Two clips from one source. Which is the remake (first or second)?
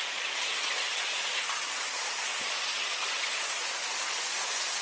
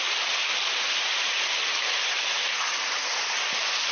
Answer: first